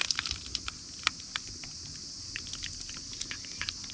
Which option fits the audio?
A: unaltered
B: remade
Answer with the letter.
A